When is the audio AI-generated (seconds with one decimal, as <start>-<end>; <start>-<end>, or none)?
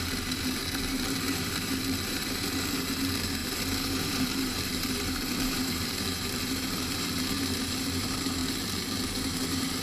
0.0-8.4; 9.0-9.8